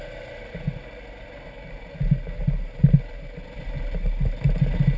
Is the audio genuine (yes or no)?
yes